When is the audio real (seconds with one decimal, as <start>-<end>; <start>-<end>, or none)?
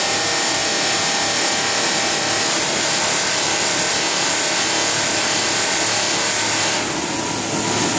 0.0-8.0